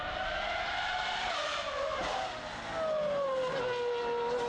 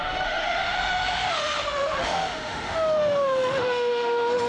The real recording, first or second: first